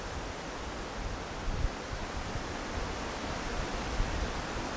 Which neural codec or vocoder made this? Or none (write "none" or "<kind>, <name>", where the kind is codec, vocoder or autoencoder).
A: none